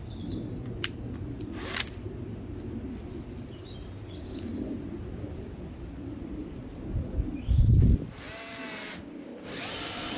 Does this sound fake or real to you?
real